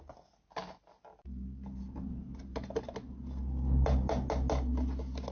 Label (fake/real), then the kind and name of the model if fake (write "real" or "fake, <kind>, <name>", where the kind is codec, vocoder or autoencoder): real